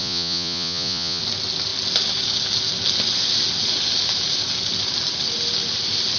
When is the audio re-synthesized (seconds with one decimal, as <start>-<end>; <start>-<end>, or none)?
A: 0.0-1.2